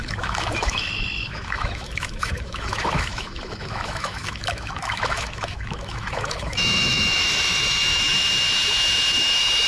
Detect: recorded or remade remade